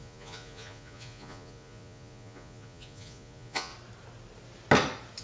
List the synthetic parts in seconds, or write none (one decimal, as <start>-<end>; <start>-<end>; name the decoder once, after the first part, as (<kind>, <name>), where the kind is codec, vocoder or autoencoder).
0.0-3.7 (vocoder, Vocos)